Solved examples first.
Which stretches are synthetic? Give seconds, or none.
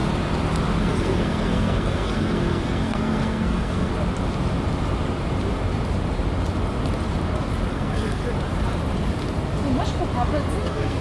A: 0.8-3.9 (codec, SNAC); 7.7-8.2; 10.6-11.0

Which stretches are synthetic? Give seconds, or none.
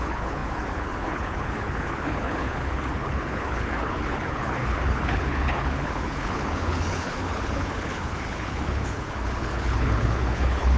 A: 0.0-10.8 (codec, HILCodec)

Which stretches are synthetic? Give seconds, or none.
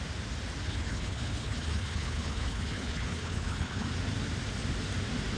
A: 0.7-3.9 (codec, HILCodec)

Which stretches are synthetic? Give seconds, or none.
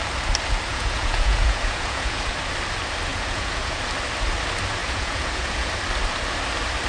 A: 0.7-2.3 (vocoder, Vocos); 3.1-3.8; 4.8-5.7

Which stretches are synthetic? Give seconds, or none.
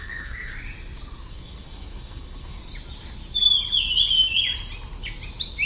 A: 0.0-0.5 (codec, SNAC); 1.3-2.6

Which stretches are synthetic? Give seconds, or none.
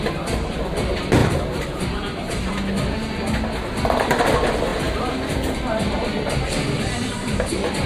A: 1.2-2.5 (vocoder, BigVGAN v2)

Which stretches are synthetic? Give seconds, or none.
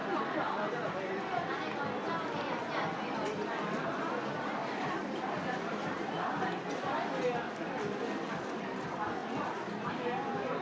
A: 0.0-1.5 (vocoder, BigVGAN v2); 4.6-6.8; 9.2-9.9